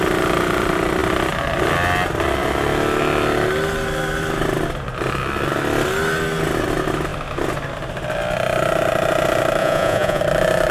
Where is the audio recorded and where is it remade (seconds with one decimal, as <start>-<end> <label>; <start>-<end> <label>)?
0.0-9.6 recorded; 9.6-10.2 remade; 10.2-10.7 recorded